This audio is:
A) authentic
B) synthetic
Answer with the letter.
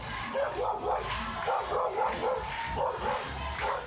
A